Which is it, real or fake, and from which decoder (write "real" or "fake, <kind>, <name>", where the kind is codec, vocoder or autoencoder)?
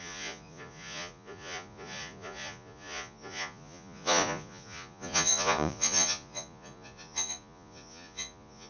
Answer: fake, vocoder, Vocos